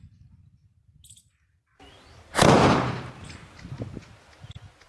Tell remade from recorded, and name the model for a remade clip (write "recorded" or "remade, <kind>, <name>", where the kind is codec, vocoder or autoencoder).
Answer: recorded